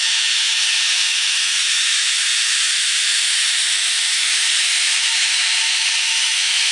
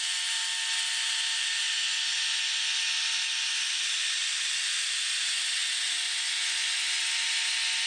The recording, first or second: second